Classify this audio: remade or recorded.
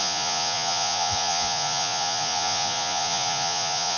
remade